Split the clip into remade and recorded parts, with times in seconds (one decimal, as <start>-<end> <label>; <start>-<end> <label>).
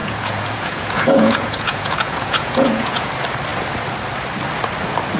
0.0-3.1 remade; 3.1-5.2 recorded